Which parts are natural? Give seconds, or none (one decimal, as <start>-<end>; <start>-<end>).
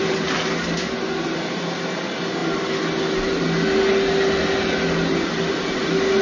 0.0-6.2